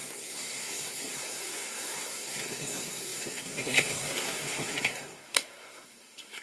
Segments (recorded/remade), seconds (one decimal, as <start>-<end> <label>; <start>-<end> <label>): 0.0-6.4 remade